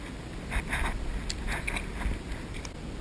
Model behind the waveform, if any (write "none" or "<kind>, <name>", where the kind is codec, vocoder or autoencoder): none